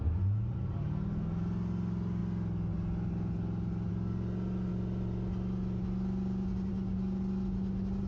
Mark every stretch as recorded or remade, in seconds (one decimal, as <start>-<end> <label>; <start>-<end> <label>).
0.0-8.1 recorded